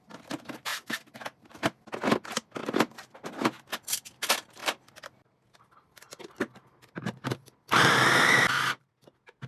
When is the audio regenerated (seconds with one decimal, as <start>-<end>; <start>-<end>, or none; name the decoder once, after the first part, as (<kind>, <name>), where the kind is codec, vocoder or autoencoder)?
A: 2.6-3.3 (vocoder, BigVGAN v2)

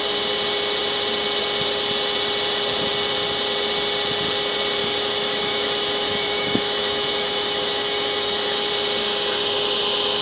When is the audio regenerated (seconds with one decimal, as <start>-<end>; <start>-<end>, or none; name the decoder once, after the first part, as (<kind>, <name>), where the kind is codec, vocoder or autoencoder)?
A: 4.8-8.7 (autoencoder, DAC-VAE)

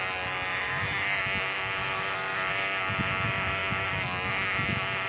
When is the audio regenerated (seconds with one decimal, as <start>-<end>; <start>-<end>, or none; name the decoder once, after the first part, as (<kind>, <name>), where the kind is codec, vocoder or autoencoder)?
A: 0.5-1.2 (vocoder, BigVGAN v2); 1.8-2.7

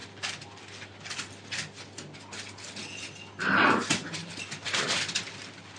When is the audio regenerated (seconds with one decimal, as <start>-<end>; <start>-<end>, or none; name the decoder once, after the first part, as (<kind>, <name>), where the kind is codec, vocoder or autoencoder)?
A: none

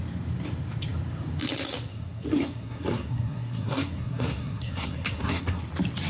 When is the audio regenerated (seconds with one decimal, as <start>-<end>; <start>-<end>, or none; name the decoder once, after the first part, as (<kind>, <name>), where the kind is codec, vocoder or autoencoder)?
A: 1.9-5.6 (codec, SNAC)

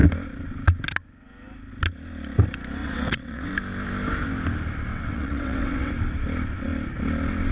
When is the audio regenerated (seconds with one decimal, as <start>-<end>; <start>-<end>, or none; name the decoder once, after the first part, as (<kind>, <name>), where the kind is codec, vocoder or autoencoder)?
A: 2.8-3.5 (vocoder, WaveNeXt); 4.9-5.9